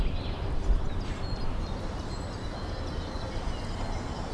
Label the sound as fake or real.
real